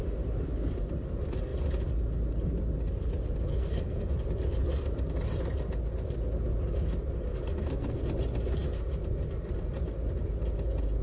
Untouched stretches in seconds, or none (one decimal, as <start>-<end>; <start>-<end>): 0.0-3.5; 4.1-7.3; 8.0-11.0

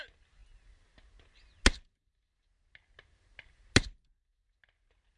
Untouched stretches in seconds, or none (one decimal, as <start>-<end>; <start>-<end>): 0.0-5.2

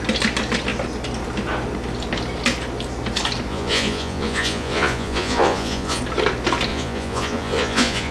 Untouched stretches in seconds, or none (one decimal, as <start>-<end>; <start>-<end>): 0.0-3.5; 6.0-6.7

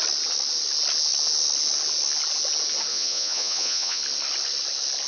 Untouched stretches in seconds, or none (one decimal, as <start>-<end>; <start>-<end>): 0.0-2.9; 4.0-5.1